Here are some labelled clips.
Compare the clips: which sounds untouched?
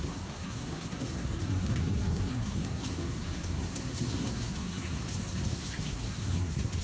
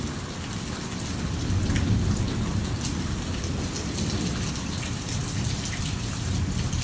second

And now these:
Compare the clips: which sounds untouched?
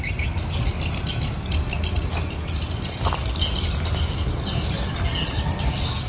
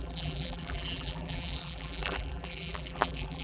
first